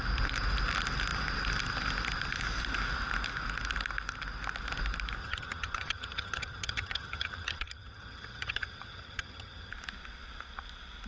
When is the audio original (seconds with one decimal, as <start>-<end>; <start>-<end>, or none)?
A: 0.0-5.2; 9.7-11.1